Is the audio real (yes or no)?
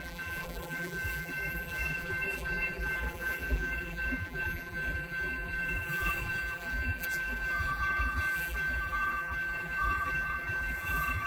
no